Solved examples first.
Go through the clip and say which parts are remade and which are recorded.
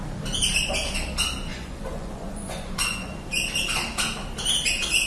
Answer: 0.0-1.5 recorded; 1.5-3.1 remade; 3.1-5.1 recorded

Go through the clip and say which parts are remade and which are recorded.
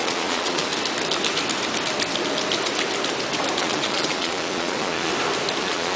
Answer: 0.0-0.7 remade; 0.7-3.6 recorded; 3.6-5.1 remade; 5.1-5.6 recorded; 5.6-6.0 remade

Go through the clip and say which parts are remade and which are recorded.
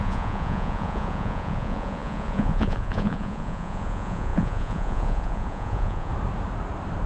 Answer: 0.0-6.1 remade; 6.1-7.1 recorded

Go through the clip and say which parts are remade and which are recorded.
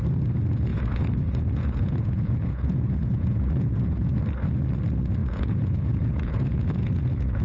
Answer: 0.0-0.7 recorded; 0.7-4.2 remade; 4.2-5.2 recorded; 5.2-7.4 remade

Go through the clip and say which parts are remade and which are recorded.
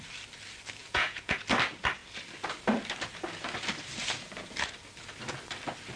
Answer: 0.0-0.8 recorded; 0.8-1.4 remade; 1.4-6.0 recorded